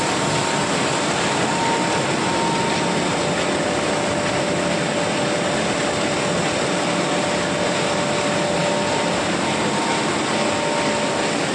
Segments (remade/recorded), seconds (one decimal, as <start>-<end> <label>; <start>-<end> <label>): 0.0-11.5 recorded